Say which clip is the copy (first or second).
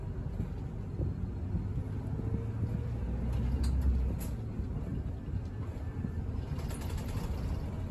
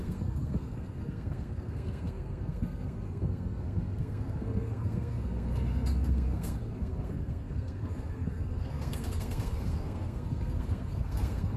second